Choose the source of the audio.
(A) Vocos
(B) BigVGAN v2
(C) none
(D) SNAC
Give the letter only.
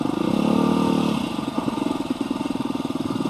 C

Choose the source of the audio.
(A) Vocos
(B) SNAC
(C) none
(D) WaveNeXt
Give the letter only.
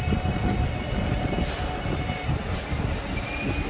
C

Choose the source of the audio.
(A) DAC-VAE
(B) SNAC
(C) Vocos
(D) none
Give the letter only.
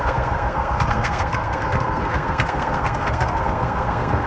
B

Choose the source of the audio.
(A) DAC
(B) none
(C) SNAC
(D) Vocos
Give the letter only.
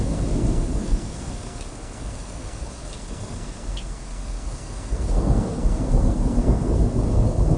C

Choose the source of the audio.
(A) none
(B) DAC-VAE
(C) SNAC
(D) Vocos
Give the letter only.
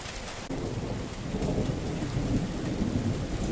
A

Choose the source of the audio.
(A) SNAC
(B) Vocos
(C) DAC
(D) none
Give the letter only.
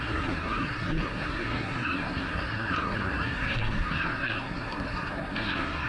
A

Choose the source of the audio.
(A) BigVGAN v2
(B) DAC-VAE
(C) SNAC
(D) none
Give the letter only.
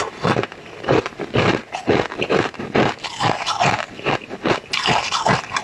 D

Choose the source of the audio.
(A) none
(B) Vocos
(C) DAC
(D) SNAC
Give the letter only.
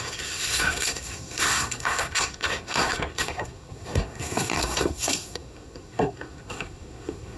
D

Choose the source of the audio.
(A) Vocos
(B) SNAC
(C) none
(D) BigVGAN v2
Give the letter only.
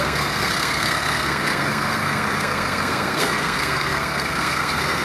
B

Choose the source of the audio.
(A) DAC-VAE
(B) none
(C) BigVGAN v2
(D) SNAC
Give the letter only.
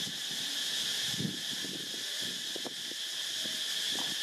B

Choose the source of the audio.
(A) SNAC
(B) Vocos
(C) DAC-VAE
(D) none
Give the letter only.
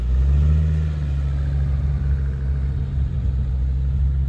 D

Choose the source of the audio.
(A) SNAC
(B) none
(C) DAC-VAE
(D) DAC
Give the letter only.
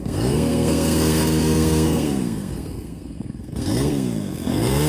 A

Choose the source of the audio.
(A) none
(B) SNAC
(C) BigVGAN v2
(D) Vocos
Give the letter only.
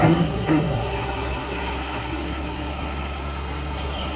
B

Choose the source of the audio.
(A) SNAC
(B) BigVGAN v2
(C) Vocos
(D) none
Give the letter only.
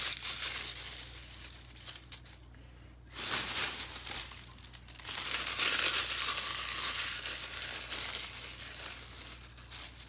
D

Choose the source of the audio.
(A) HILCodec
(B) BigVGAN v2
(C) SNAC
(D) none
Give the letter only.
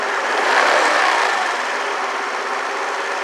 D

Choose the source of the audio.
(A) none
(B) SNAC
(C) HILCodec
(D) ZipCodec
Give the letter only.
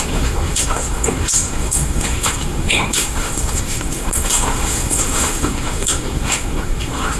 B